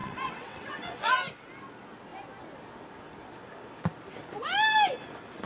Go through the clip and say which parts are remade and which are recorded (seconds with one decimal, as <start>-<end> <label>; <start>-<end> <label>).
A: 0.0-1.1 remade; 1.1-5.5 recorded